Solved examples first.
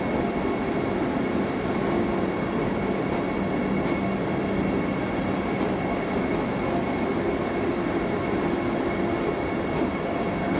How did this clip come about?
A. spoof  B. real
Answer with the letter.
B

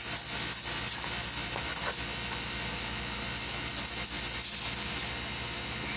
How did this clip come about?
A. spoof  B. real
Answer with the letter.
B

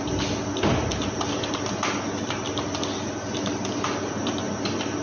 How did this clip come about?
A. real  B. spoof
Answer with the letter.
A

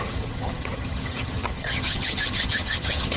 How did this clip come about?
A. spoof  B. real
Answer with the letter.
A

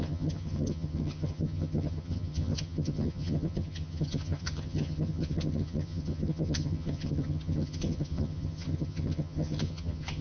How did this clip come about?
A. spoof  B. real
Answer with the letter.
A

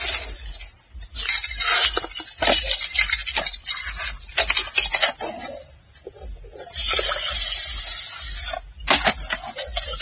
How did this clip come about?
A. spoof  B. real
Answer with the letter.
B